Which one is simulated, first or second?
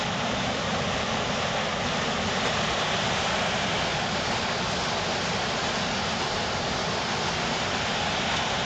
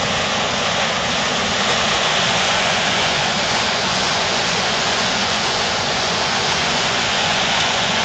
second